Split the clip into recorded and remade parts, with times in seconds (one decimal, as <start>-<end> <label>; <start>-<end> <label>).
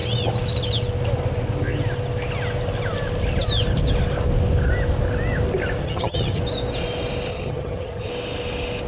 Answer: 0.0-5.8 recorded; 5.8-6.4 remade; 6.4-7.3 recorded; 7.3-8.1 remade; 8.1-8.9 recorded